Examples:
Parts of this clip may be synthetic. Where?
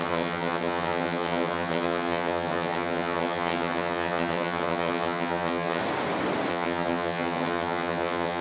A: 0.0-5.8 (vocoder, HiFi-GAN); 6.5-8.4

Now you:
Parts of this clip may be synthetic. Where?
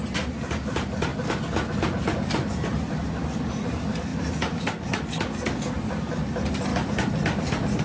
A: none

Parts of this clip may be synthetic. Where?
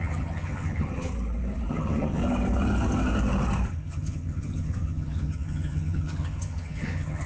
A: 0.0-1.1 (vocoder, HiFi-GAN); 1.7-2.2; 3.7-7.3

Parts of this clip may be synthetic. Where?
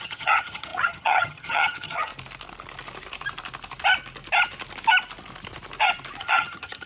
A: 0.0-2.1 (vocoder, HiFi-GAN); 6.2-6.9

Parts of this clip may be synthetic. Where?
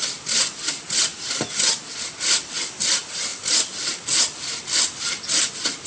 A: none